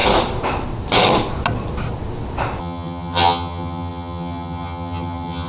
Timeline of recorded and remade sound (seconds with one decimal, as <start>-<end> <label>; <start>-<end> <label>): 0.0-2.6 recorded; 2.6-5.5 remade